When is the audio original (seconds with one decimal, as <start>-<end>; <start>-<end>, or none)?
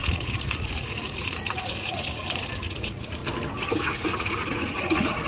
3.2-3.8